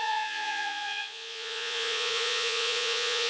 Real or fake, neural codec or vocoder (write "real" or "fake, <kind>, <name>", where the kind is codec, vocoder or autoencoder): fake, vocoder, Vocos